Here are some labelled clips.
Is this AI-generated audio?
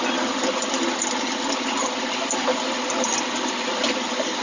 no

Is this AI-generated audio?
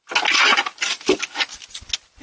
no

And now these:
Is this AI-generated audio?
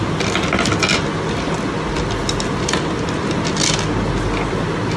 no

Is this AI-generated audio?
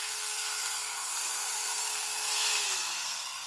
yes